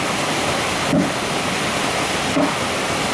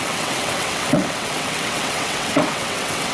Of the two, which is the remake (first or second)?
second